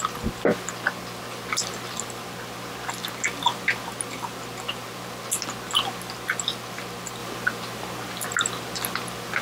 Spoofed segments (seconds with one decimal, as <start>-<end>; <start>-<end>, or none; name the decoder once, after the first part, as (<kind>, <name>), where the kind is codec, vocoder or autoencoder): none